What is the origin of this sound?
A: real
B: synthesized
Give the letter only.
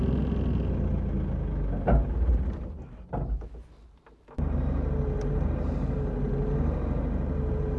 A